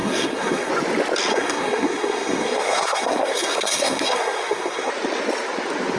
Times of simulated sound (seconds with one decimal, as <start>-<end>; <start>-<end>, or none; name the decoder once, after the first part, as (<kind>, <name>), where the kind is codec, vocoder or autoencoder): 0.0-0.7 (codec, SNAC); 1.3-4.9